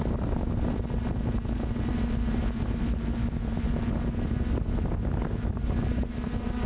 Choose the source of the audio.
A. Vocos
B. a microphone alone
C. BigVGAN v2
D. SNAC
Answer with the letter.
B